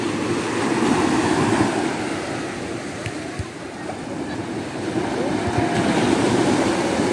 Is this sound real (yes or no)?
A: yes